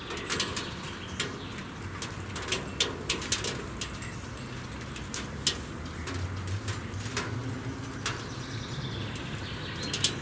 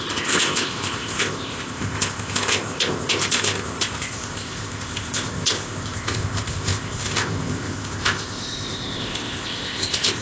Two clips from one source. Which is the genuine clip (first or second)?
first